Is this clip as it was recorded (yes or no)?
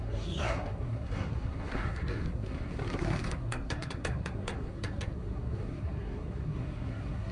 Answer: no